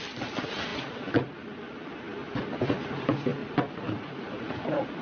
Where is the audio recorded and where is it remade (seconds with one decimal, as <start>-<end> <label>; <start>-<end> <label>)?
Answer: 0.0-3.4 recorded; 3.4-4.3 remade; 4.3-5.0 recorded